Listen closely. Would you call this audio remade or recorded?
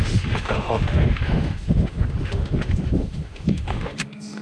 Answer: remade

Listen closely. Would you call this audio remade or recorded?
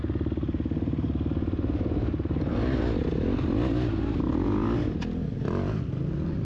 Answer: recorded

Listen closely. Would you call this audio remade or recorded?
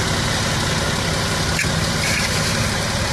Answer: recorded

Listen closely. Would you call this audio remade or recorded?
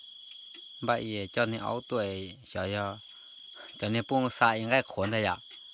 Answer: recorded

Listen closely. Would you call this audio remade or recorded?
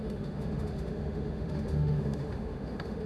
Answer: remade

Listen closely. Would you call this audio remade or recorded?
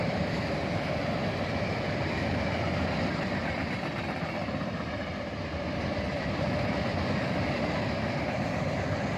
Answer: recorded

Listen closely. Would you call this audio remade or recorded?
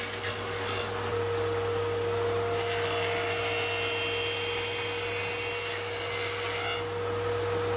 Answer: recorded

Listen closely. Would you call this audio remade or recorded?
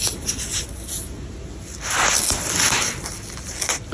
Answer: recorded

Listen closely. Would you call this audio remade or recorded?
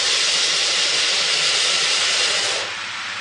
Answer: recorded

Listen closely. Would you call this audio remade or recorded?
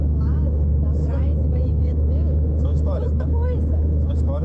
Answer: remade